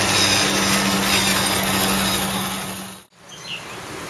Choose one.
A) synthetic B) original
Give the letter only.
B